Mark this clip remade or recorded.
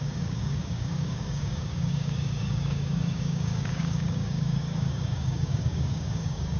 remade